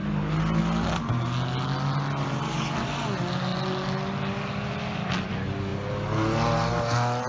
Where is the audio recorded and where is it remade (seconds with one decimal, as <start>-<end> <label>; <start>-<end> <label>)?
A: 0.0-7.3 recorded